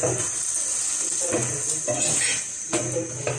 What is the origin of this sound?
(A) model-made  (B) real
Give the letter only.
B